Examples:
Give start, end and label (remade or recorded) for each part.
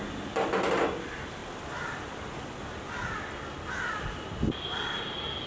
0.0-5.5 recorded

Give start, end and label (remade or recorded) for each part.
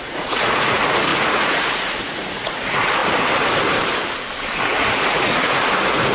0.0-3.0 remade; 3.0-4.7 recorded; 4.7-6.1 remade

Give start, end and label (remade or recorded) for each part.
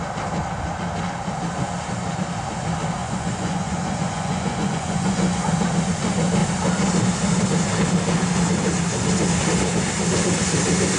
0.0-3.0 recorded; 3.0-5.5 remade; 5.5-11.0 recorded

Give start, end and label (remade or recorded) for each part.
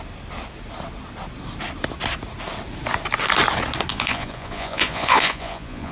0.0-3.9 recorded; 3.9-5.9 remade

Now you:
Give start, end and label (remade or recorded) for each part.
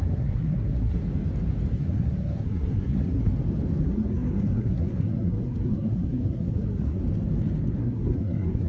0.0-1.0 remade; 1.0-1.7 recorded; 1.7-3.3 remade; 3.3-3.8 recorded; 3.8-7.0 remade; 7.0-7.8 recorded; 7.8-8.7 remade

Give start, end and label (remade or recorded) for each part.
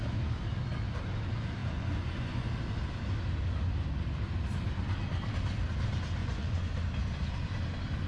0.0-1.6 recorded; 1.6-2.5 remade; 2.5-6.2 recorded; 6.2-6.8 remade; 6.8-8.1 recorded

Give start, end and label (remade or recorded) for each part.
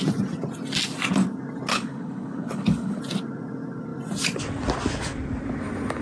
0.0-1.7 recorded; 1.7-3.0 remade; 3.0-6.0 recorded